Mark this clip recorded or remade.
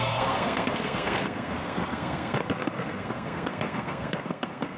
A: remade